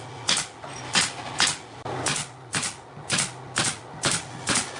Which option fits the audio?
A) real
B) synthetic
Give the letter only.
A